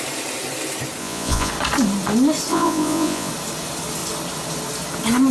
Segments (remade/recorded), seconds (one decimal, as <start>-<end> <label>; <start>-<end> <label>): 0.0-1.0 recorded; 1.0-1.5 remade; 1.5-2.5 recorded; 2.5-3.3 remade; 3.3-5.3 recorded